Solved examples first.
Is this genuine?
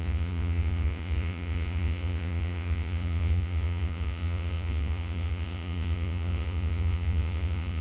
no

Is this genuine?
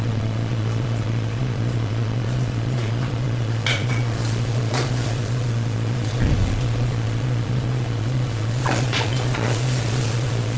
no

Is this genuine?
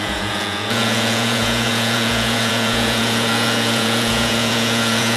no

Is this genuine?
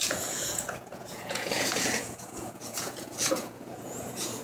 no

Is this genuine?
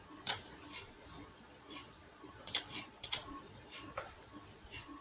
no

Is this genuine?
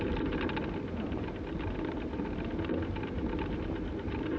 yes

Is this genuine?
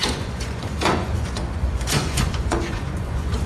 no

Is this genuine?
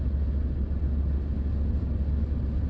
yes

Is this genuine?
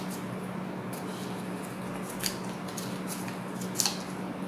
yes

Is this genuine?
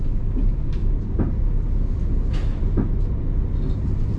yes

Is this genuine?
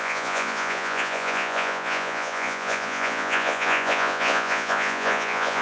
no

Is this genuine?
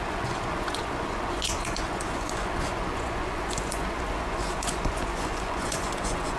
no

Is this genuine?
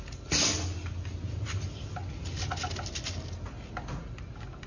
yes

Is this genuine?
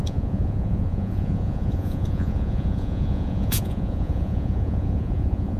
no